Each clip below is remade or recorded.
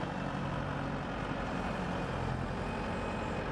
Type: recorded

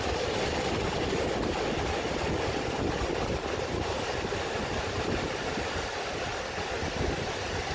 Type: recorded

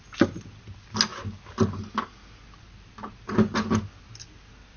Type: recorded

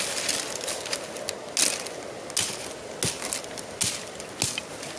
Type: recorded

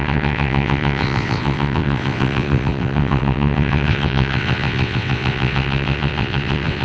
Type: remade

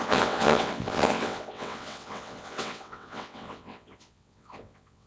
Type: remade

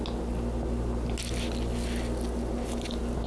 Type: recorded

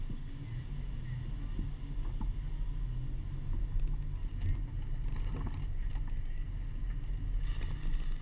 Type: recorded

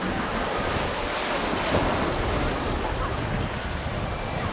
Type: recorded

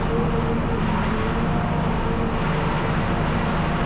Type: recorded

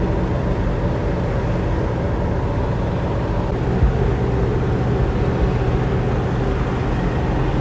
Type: recorded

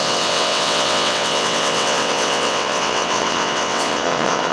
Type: remade